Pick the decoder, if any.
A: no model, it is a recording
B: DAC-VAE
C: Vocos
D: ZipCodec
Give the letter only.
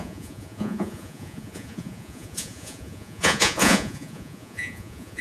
C